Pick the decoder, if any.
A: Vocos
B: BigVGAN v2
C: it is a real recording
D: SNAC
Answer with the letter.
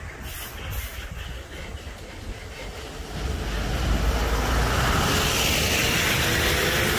C